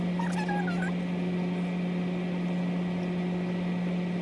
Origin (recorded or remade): recorded